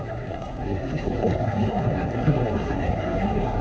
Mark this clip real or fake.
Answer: fake